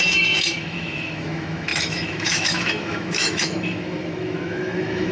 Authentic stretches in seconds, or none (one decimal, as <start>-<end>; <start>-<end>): none